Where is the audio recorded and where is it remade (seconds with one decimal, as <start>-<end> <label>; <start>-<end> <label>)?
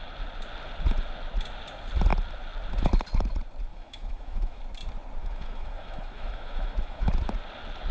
0.0-3.7 recorded; 3.7-4.6 remade; 4.6-5.2 recorded; 5.2-7.1 remade; 7.1-7.9 recorded